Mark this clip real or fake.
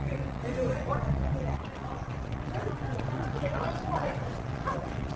fake